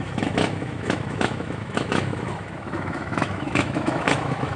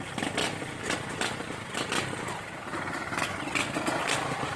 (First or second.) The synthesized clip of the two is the first